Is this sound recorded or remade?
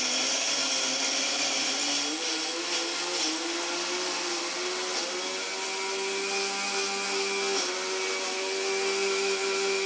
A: recorded